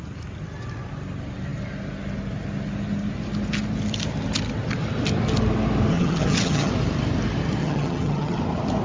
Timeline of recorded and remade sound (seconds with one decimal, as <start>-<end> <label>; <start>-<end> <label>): 0.0-5.9 recorded; 5.9-6.7 remade; 6.7-7.6 recorded; 7.6-8.4 remade; 8.4-8.8 recorded